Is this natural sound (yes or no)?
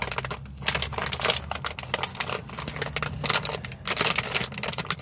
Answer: yes